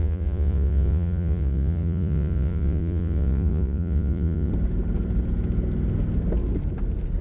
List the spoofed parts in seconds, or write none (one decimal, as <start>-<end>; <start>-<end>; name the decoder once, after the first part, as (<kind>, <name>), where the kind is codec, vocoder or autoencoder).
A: 0.0-4.5 (vocoder, Vocos)